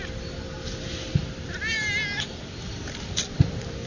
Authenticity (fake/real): real